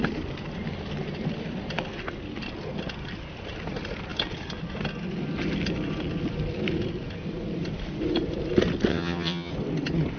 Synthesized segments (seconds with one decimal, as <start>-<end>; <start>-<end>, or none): 8.9-9.5